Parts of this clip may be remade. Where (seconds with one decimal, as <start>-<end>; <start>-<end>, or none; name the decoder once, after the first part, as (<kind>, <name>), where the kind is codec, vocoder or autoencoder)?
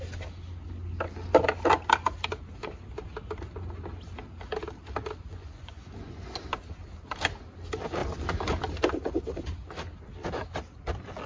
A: 5.3-6.4 (vocoder, Vocos)